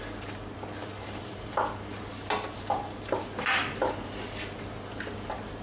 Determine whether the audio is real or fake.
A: real